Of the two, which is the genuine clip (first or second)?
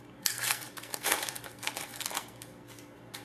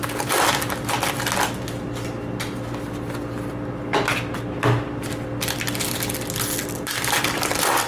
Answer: second